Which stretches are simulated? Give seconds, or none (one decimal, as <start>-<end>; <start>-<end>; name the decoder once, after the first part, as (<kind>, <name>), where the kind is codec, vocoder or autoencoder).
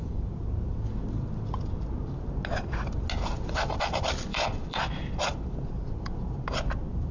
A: 4.3-5.0 (vocoder, BigVGAN v2)